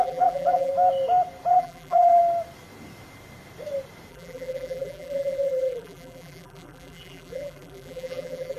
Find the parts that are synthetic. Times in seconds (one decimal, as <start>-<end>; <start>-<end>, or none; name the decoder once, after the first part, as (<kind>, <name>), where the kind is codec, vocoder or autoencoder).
0.0-0.7 (vocoder, BigVGAN v2); 1.5-2.2; 4.1-8.6